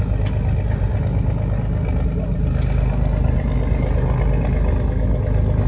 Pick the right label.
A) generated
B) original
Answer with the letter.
B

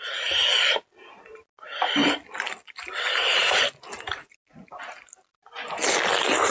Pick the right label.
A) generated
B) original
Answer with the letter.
B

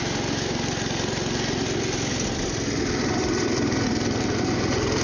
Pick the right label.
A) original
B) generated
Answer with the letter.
A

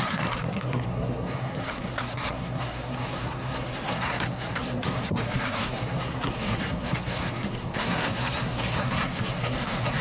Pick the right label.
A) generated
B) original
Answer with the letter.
A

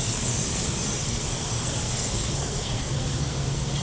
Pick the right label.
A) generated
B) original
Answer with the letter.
A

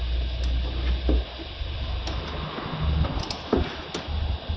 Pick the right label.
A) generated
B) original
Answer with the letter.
B